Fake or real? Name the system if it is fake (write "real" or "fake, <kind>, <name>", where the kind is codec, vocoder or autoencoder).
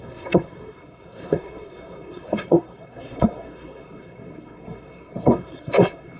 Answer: fake, codec, SNAC